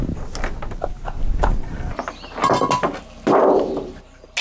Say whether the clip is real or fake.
real